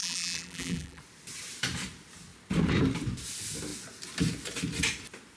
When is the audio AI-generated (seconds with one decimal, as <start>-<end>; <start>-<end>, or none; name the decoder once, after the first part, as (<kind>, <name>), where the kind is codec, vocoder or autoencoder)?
0.0-1.0 (vocoder, BigVGAN v2)